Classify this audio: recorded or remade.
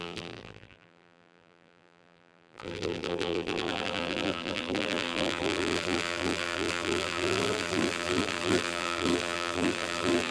remade